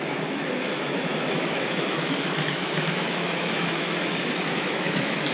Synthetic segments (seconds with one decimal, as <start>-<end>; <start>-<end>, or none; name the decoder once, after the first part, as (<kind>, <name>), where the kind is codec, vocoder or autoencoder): 0.0-5.3 (autoencoder, DAC-VAE)